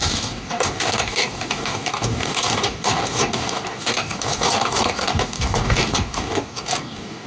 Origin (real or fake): fake